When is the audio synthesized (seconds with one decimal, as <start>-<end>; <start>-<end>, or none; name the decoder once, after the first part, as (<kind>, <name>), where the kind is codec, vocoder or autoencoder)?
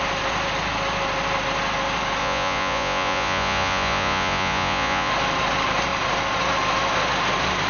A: 2.2-5.1 (vocoder, Vocos)